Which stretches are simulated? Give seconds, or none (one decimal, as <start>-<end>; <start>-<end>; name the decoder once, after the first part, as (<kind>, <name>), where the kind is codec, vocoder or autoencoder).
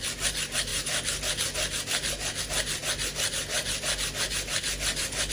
none